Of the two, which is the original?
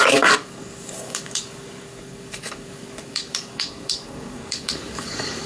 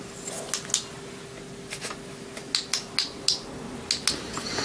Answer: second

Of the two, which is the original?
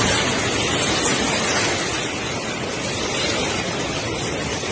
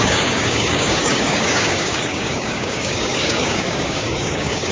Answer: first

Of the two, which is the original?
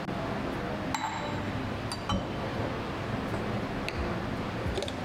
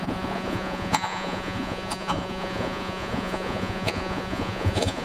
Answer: first